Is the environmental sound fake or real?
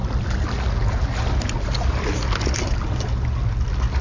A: real